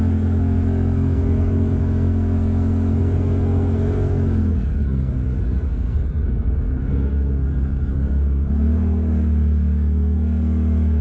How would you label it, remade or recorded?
remade